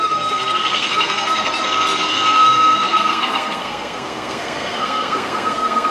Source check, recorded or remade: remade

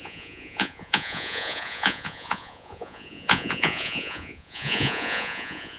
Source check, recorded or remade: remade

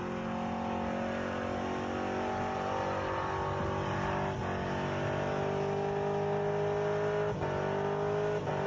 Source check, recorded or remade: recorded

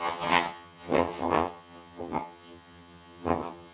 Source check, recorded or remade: remade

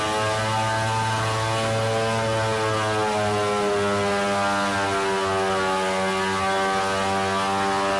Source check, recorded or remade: recorded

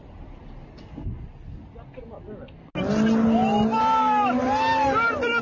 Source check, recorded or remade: recorded